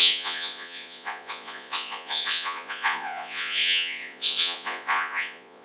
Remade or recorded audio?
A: remade